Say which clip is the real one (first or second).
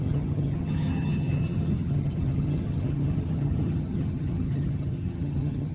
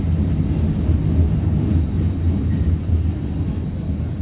second